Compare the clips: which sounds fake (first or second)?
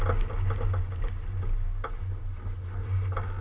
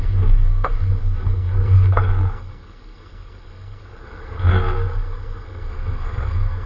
second